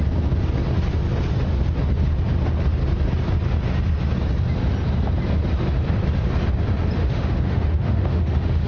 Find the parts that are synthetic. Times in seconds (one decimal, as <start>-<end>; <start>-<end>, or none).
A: 7.0-8.7